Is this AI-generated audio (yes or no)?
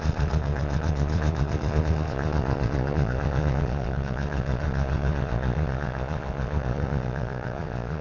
yes